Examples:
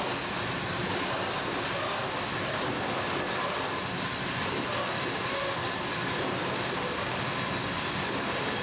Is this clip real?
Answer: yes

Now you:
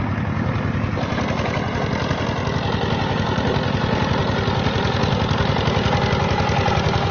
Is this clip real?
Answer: yes